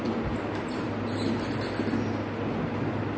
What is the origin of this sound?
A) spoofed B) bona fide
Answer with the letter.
B